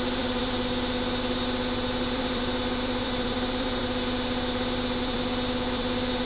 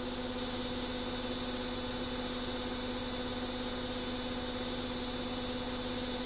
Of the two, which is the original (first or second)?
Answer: second